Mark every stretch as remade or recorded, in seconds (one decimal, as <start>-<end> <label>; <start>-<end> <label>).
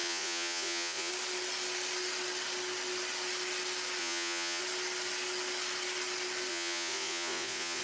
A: 0.0-1.1 remade; 1.1-4.0 recorded; 4.0-4.6 remade; 4.6-6.5 recorded; 6.5-7.8 remade